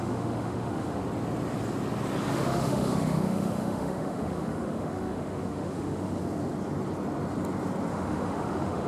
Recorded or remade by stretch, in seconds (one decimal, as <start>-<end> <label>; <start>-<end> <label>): 0.0-1.0 remade; 1.0-2.3 recorded; 2.3-6.2 remade; 6.2-7.9 recorded; 7.9-8.9 remade